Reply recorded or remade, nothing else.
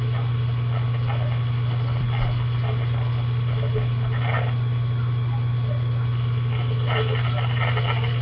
recorded